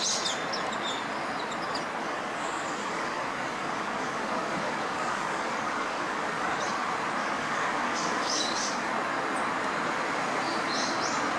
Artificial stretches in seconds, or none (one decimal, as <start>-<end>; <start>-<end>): 2.0-6.6; 7.2-8.9